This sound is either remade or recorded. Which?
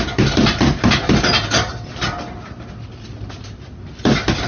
recorded